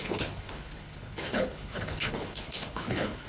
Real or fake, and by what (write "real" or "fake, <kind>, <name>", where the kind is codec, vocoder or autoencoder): fake, codec, HILCodec